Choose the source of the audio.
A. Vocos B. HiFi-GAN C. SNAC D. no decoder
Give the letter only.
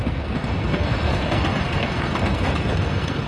C